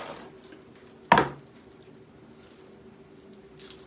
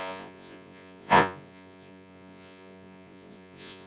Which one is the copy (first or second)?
second